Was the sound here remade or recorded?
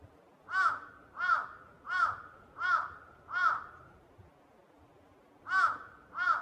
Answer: recorded